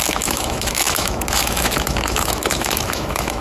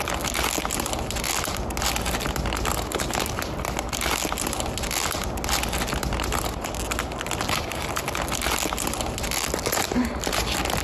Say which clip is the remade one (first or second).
first